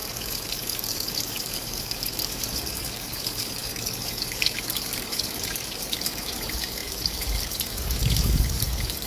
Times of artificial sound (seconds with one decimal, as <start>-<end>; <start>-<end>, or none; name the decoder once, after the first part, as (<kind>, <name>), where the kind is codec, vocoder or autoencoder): 0.0-9.1 (codec, DAC)